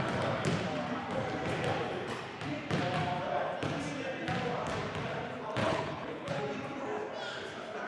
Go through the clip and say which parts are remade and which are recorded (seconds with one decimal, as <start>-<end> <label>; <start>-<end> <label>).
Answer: 0.0-5.6 recorded; 5.6-6.4 remade; 6.4-7.9 recorded